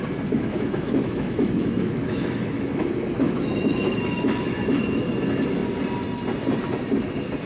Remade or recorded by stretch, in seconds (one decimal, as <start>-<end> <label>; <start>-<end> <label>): 0.0-0.4 recorded; 0.4-4.8 remade; 4.8-7.5 recorded